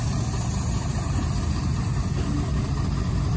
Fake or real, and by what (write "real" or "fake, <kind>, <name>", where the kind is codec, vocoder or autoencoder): real